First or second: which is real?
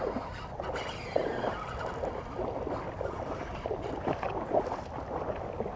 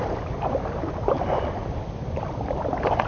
first